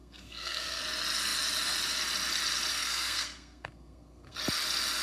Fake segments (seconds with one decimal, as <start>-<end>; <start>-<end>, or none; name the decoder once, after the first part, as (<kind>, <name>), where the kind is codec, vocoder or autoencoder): 0.0-0.8 (codec, SNAC); 2.7-4.4